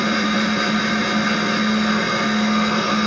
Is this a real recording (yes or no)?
yes